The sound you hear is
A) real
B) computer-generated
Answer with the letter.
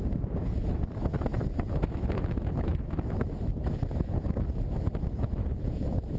B